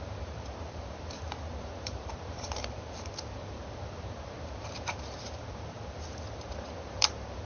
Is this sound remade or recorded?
remade